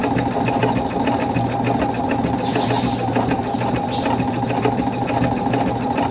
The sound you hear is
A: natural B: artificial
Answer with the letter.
A